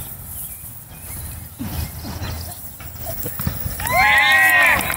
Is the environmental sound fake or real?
real